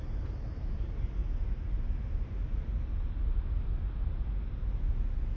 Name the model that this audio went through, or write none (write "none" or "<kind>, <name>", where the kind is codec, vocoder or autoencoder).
none